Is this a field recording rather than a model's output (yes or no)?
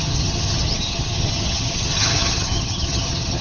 no